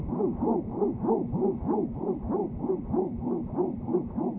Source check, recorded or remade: recorded